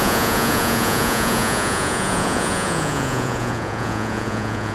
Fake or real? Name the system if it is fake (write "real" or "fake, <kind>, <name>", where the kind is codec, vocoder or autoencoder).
fake, vocoder, Vocos